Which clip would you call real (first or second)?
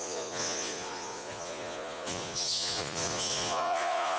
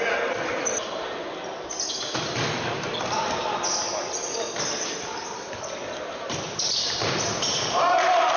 second